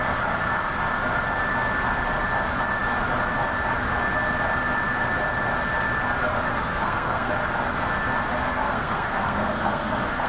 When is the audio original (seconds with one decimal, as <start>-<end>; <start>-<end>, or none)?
0.0-6.5; 7.3-8.4